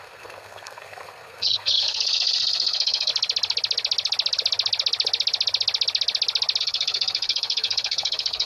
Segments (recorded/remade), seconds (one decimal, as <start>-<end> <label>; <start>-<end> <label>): 0.0-3.1 remade; 3.1-6.6 recorded; 6.6-8.5 remade